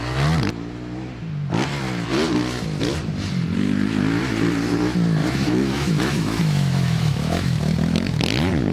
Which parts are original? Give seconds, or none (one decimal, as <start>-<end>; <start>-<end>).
0.0-5.2; 8.2-8.7